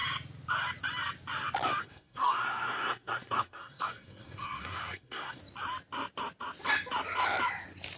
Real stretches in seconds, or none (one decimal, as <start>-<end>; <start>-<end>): 0.0-1.8; 5.4-8.0